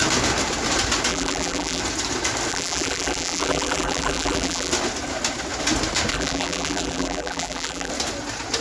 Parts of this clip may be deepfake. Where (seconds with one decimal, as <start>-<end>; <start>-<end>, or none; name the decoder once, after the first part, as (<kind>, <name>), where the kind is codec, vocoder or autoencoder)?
1.1-1.8 (vocoder, BigVGAN v2); 2.5-4.7; 6.1-7.9